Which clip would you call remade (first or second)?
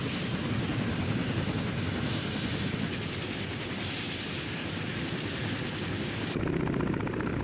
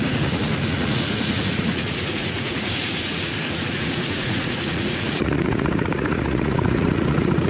second